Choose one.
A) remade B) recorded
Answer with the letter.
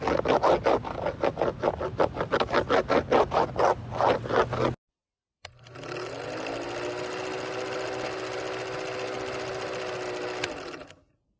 B